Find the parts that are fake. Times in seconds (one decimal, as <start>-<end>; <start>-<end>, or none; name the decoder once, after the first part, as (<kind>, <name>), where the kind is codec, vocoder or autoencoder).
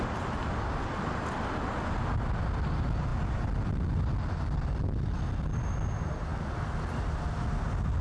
none